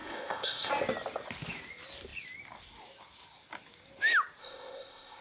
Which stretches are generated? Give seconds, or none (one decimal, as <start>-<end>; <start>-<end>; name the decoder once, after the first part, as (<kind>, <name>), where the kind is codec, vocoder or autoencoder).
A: 0.0-0.7 (codec, ZipCodec); 4.4-5.2